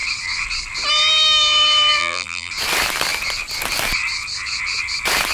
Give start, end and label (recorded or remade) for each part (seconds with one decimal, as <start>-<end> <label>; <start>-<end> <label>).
0.0-2.0 recorded; 2.0-2.5 remade; 2.5-5.3 recorded